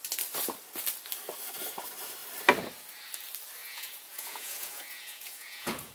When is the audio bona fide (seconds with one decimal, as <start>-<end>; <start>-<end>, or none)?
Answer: 0.0-3.6